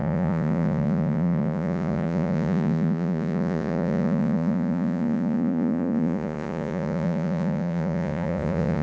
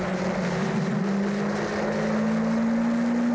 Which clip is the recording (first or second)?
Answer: second